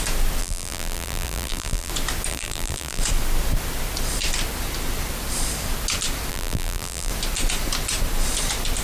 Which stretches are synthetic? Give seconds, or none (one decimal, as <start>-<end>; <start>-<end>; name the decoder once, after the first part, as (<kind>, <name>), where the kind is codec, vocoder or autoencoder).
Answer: 0.4-1.9 (vocoder, BigVGAN v2); 2.3-3.0; 6.3-7.1